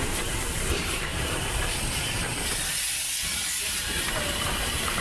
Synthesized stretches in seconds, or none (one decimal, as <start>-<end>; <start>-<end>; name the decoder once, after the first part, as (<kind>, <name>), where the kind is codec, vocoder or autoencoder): 0.0-5.0 (vocoder, BigVGAN v2)